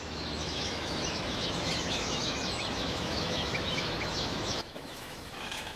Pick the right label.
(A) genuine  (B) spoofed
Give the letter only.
B